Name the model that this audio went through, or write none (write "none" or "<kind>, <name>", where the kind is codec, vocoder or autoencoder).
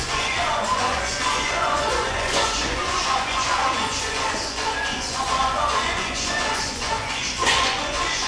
vocoder, Vocos